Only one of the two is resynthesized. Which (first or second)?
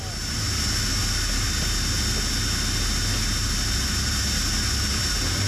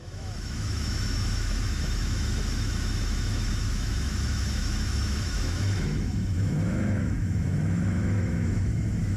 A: second